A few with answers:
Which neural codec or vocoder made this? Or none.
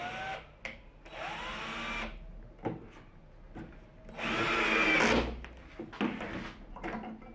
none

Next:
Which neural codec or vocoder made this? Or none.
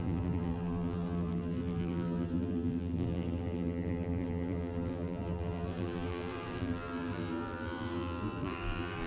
vocoder, BigVGAN v2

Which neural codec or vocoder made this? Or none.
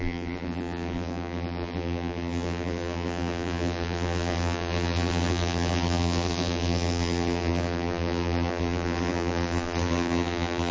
vocoder, BigVGAN v2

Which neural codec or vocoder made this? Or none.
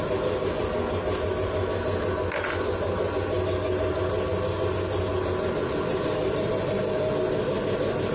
none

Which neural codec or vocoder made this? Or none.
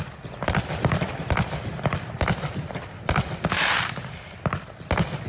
none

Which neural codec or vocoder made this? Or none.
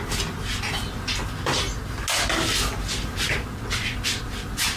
none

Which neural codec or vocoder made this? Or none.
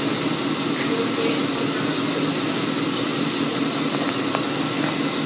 none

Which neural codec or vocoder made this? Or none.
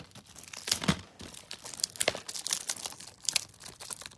none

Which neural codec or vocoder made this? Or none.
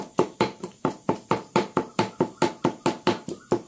vocoder, BigVGAN v2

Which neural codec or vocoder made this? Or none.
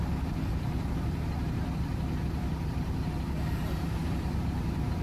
vocoder, BigVGAN v2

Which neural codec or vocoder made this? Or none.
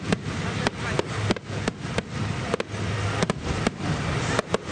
none